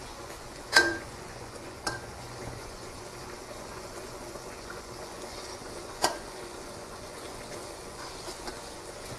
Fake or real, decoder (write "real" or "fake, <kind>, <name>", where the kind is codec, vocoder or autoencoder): fake, vocoder, Vocos